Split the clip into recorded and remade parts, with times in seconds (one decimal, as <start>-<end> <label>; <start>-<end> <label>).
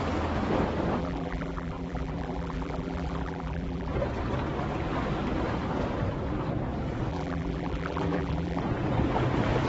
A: 0.0-1.0 recorded; 1.0-3.9 remade; 3.9-7.1 recorded; 7.1-8.6 remade; 8.6-9.7 recorded